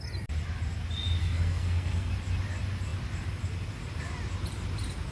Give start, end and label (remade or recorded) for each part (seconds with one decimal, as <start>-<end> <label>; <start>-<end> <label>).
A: 0.0-1.2 recorded; 1.2-2.1 remade; 2.1-5.1 recorded